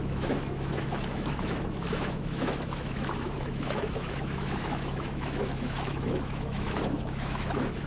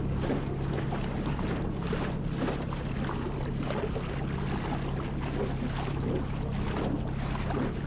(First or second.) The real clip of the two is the second